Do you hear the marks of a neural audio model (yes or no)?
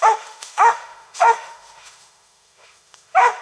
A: yes